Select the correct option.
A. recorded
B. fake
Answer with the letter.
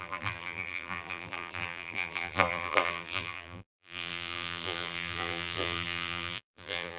B